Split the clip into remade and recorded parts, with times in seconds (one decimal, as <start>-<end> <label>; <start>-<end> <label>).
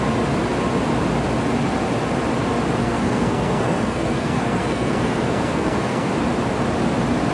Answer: 0.0-2.8 recorded; 2.8-6.1 remade; 6.1-7.3 recorded